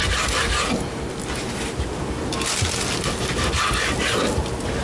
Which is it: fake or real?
real